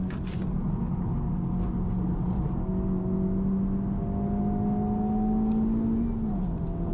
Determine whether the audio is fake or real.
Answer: real